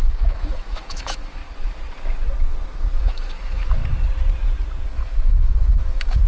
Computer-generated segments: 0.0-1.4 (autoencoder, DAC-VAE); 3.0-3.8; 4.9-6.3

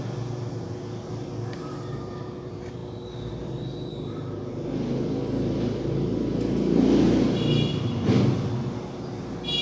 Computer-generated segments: none

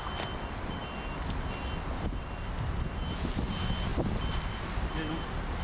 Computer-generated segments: none

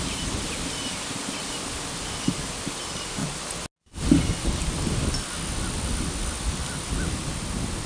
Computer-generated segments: none

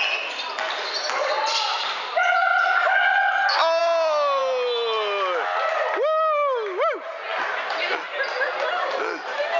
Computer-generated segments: none

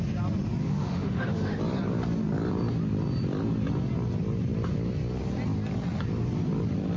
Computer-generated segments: 0.6-1.6 (autoencoder, DAC-VAE)

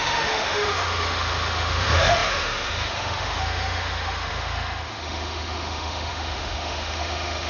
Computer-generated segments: 0.0-7.5 (autoencoder, DAC-VAE)